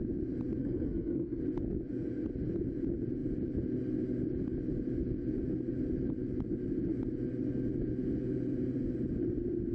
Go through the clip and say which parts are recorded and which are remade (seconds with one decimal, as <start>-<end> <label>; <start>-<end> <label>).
0.0-0.6 recorded; 0.6-1.4 remade; 1.4-9.7 recorded

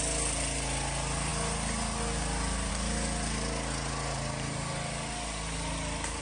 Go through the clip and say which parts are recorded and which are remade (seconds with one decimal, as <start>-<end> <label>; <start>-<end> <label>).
0.0-6.2 recorded

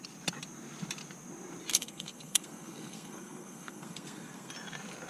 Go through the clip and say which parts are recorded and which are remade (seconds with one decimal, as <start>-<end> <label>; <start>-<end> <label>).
0.0-1.7 recorded; 1.7-4.5 remade; 4.5-5.1 recorded

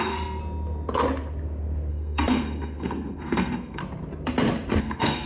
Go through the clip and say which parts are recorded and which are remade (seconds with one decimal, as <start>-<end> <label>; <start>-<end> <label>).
0.0-0.4 remade; 0.4-1.9 recorded; 1.9-3.8 remade; 3.8-4.8 recorded; 4.8-5.3 remade